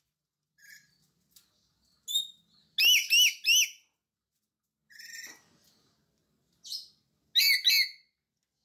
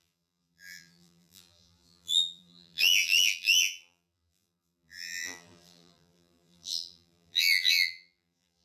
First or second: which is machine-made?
second